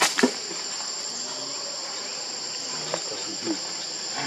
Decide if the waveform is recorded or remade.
recorded